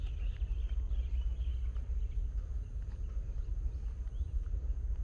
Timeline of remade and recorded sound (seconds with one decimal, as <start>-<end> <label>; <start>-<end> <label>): 0.0-5.0 recorded